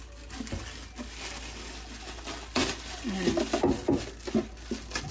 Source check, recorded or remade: recorded